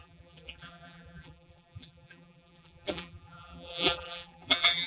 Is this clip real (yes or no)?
no